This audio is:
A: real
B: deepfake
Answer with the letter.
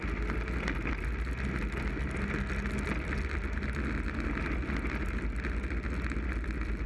A